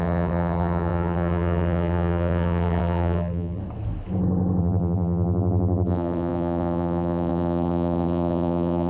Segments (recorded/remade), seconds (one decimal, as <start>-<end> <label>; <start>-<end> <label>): 0.0-3.6 remade; 3.6-4.6 recorded; 4.6-8.9 remade